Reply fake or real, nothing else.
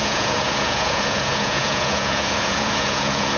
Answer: fake